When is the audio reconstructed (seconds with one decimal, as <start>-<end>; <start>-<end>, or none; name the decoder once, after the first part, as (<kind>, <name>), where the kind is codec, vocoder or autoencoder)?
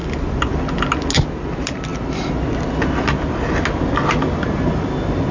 none